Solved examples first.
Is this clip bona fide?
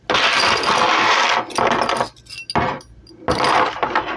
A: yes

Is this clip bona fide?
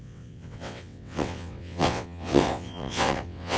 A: no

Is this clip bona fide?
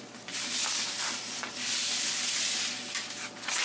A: yes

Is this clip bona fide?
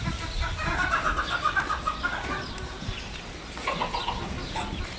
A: yes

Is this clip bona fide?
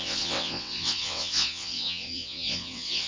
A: no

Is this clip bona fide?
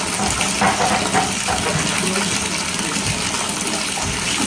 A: yes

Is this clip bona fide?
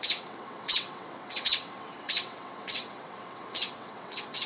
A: no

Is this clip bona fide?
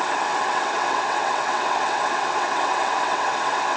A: no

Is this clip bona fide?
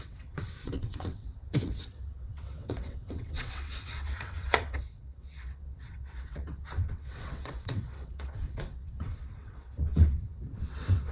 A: no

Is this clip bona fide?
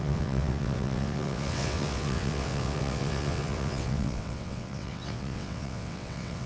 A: no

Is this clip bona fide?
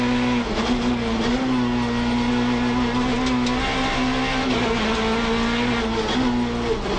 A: yes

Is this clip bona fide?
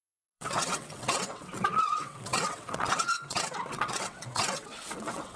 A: no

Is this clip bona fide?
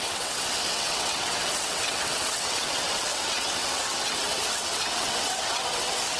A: no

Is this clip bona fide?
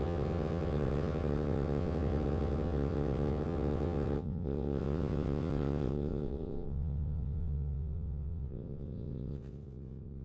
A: no